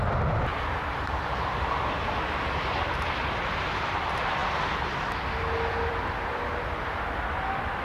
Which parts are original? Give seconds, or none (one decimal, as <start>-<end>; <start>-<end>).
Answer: 0.0-7.8